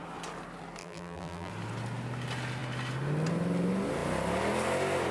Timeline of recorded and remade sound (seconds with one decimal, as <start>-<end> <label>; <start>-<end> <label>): 0.0-0.8 recorded; 0.8-1.5 remade; 1.5-5.1 recorded